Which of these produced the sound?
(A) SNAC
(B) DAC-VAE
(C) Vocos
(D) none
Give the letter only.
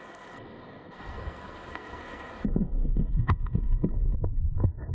A